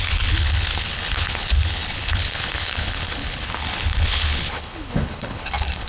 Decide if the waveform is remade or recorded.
remade